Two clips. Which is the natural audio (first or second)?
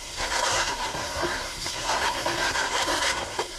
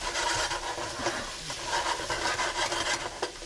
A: second